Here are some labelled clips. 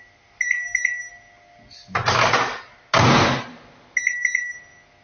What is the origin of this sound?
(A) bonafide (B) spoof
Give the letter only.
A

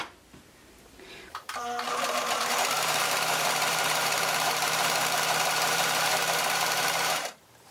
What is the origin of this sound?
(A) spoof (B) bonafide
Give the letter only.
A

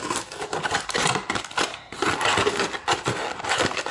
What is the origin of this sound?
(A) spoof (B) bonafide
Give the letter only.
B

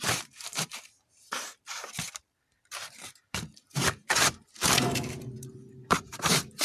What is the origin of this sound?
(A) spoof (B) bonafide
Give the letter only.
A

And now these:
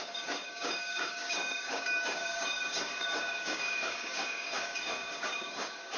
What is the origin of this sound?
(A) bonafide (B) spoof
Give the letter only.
B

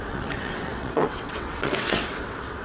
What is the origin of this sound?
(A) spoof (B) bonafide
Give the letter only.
A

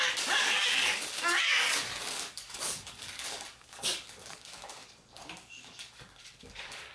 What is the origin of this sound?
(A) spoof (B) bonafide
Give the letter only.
A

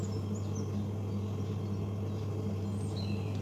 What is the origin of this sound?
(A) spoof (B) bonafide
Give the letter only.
B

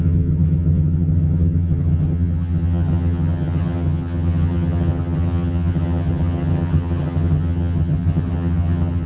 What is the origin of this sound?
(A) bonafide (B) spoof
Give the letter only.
B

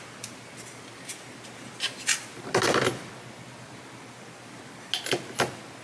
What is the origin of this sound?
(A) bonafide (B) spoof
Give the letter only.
A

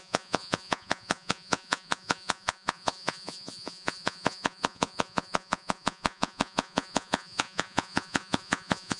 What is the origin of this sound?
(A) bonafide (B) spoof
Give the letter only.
B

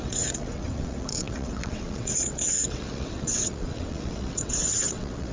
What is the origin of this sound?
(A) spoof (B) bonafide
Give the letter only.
A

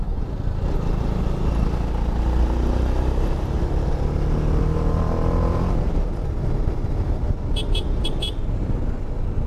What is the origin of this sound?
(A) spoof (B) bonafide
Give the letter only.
B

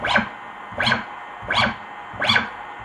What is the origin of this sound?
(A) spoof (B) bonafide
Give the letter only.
B